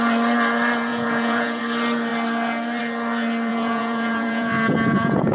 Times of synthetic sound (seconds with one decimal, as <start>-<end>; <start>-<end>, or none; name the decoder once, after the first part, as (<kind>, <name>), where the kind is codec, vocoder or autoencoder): 0.9-1.6 (vocoder, Vocos); 3.5-5.3